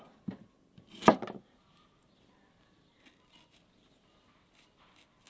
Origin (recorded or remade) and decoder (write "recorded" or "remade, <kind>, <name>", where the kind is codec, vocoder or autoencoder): recorded